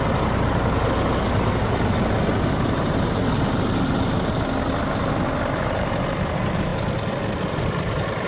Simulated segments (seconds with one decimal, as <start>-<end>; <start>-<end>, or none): none